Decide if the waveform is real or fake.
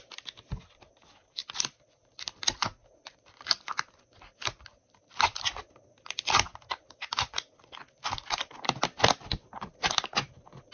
real